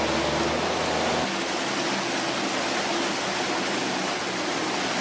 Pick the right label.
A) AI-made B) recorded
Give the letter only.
B